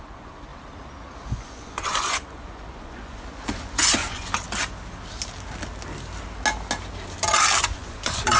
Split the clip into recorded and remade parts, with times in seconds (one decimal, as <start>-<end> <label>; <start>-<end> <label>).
0.0-0.5 remade; 0.5-1.3 recorded; 1.3-4.3 remade; 4.3-7.6 recorded; 7.6-8.4 remade